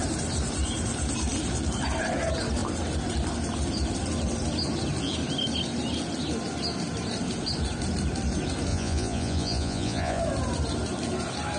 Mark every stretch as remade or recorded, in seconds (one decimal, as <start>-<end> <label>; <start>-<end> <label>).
0.0-8.7 recorded; 8.7-10.2 remade; 10.2-11.6 recorded